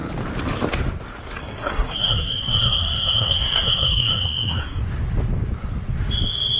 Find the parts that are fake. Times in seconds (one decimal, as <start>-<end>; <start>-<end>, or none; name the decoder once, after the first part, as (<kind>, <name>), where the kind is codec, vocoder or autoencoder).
1.4-4.8 (codec, SNAC)